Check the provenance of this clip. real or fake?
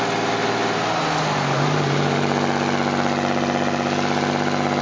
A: real